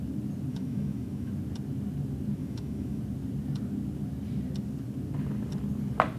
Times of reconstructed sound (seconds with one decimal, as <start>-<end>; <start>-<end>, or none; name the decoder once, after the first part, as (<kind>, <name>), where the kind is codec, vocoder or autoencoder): 0.5-1.3 (autoencoder, DAC-VAE); 2.4-3.0